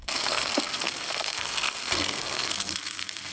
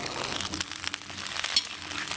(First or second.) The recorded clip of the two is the second